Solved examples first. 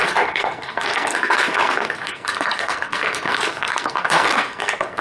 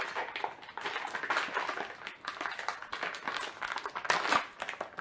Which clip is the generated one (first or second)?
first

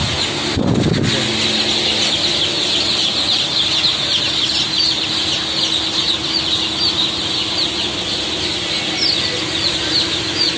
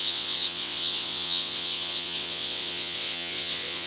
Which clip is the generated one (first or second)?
second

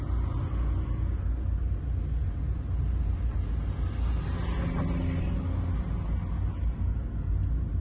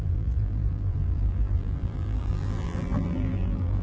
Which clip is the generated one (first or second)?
second